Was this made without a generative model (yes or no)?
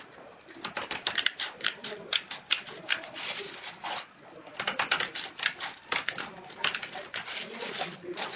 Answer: yes